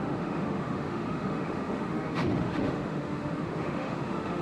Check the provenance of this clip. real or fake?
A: fake